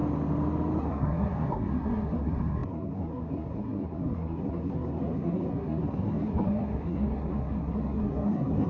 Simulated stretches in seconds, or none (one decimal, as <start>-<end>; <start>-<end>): 0.8-8.7